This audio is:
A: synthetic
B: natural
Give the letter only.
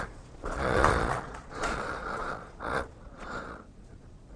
A